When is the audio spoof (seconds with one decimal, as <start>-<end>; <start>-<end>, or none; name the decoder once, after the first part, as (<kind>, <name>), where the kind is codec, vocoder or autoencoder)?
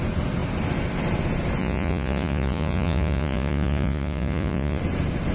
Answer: 1.6-4.8 (vocoder, Vocos)